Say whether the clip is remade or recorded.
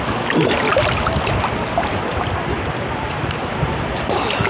recorded